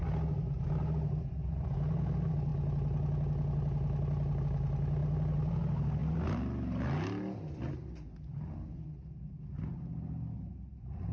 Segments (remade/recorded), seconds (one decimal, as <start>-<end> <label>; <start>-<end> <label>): 0.0-11.1 recorded